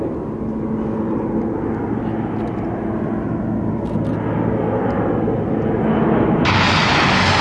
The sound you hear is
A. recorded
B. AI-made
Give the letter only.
A